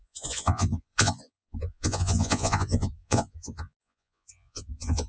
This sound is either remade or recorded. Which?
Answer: remade